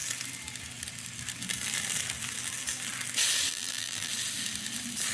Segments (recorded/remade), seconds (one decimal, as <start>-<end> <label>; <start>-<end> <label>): 0.0-3.5 recorded; 3.5-4.1 remade; 4.1-5.1 recorded